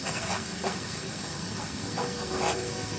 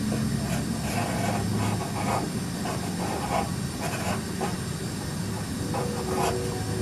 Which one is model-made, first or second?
first